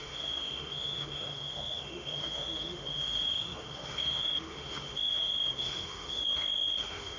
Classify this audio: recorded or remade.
remade